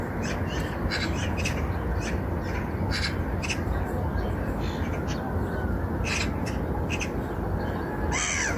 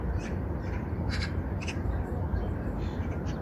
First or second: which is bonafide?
first